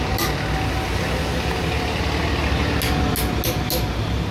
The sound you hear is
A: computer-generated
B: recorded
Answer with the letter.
B